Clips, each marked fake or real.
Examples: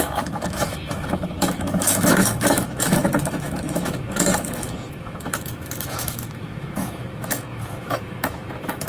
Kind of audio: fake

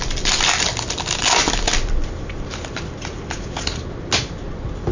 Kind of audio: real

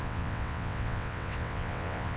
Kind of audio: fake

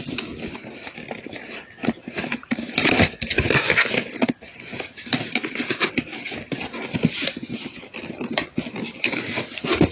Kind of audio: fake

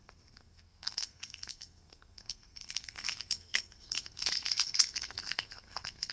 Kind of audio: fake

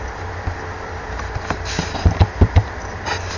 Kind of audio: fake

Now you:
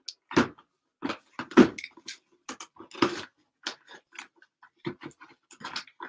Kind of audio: real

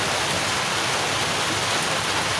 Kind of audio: real